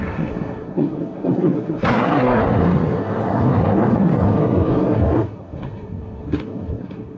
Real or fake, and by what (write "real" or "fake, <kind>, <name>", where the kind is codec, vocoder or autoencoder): fake, codec, SNAC